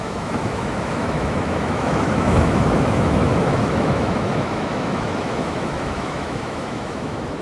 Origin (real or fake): fake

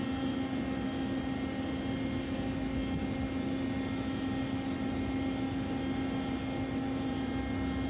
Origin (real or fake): real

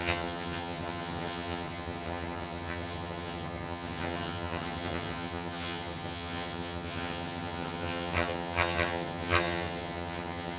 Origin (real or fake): fake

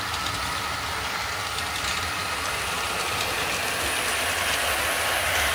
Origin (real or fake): real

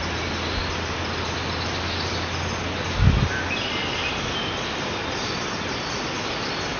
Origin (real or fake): real